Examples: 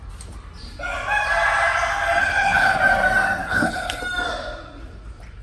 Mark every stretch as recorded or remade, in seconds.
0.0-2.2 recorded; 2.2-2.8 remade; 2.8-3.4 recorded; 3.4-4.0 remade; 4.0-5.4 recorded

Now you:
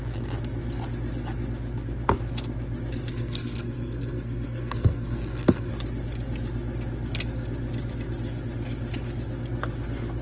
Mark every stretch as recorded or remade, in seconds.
0.0-3.1 recorded; 3.1-5.7 remade; 5.7-10.2 recorded

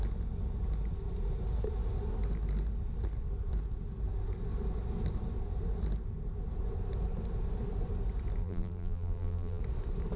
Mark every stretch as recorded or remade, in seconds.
0.0-8.4 recorded; 8.4-9.6 remade; 9.6-10.2 recorded

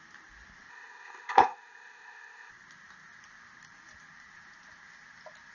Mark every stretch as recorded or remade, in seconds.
0.0-0.7 recorded; 0.7-2.5 remade; 2.5-5.5 recorded

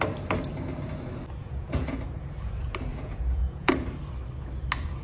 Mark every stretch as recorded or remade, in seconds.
0.0-1.4 recorded; 1.4-2.0 remade; 2.0-2.9 recorded; 2.9-3.7 remade; 3.7-5.0 recorded

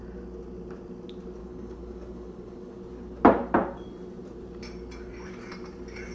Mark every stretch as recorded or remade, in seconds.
0.0-1.4 recorded; 1.4-2.8 remade; 2.8-6.1 recorded

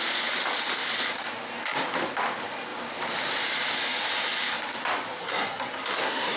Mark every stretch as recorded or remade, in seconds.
0.0-5.2 recorded; 5.2-6.4 remade

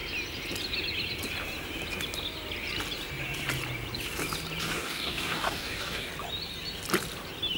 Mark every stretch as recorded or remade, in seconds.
0.0-4.6 recorded; 4.6-6.1 remade; 6.1-7.6 recorded